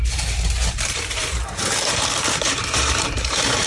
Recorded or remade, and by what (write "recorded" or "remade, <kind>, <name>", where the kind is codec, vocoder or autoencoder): remade, vocoder, BigVGAN v2